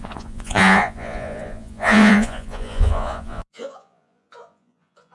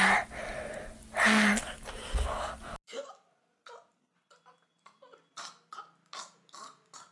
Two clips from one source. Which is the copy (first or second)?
first